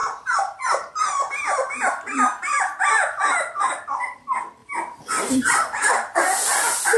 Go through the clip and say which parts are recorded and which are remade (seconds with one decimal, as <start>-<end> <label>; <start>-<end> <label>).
0.0-3.7 remade; 3.7-4.6 recorded; 4.6-5.9 remade; 5.9-7.0 recorded